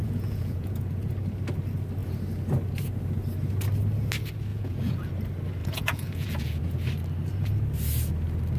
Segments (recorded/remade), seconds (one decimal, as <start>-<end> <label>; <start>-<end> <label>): 0.0-1.1 remade; 1.1-4.5 recorded; 4.5-5.1 remade; 5.1-5.6 recorded; 5.6-6.6 remade; 6.6-8.6 recorded